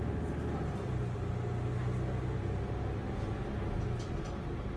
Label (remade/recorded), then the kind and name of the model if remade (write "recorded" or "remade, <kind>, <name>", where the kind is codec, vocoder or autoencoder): recorded